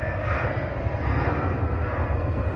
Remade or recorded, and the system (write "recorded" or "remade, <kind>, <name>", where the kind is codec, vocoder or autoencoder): remade, codec, SNAC